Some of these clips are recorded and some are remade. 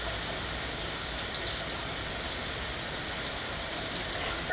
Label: recorded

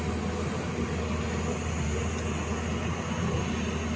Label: recorded